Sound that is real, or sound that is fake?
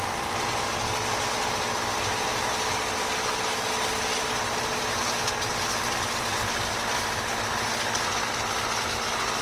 real